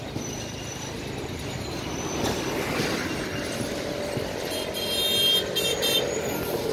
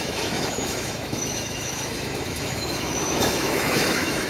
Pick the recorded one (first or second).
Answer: first